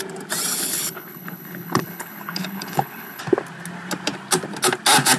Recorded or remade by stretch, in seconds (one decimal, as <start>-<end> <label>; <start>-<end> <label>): 0.0-0.5 recorded; 0.5-3.2 remade; 3.2-5.2 recorded